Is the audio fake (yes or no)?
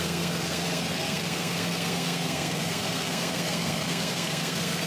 yes